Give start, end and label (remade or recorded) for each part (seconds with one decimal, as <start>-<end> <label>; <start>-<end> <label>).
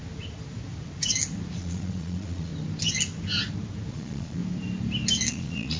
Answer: 0.0-1.6 recorded; 1.6-2.5 remade; 2.5-3.9 recorded; 3.9-4.4 remade; 4.4-5.3 recorded; 5.3-5.8 remade